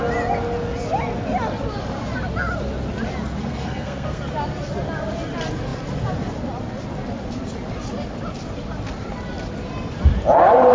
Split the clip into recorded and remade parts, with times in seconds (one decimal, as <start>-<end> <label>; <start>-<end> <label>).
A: 0.0-3.4 recorded; 3.4-4.2 remade; 4.2-10.7 recorded